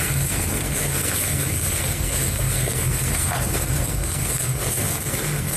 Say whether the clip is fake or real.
fake